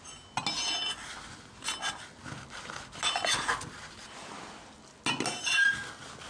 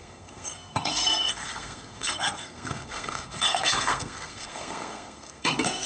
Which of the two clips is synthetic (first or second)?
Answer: second